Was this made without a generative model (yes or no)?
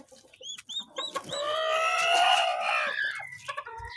yes